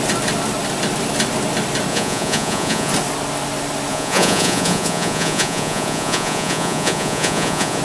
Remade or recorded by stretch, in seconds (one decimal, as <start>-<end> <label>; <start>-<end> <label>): 0.0-1.9 recorded; 1.9-2.9 remade; 2.9-3.9 recorded; 3.9-7.8 remade